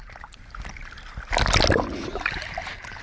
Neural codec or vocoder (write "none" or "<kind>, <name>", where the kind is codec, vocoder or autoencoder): none